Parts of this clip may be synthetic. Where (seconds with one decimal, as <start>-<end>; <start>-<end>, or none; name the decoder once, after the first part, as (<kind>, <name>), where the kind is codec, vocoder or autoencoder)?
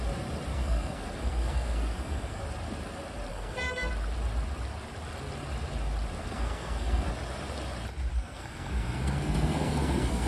0.5-2.4 (codec, SNAC); 3.3-3.9; 6.2-7.1; 8.1-10.3